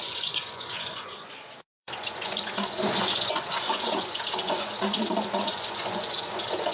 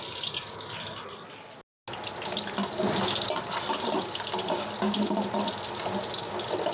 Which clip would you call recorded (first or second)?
second